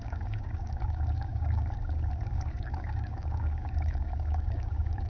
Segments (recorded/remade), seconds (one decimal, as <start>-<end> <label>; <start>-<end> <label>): 0.0-5.1 remade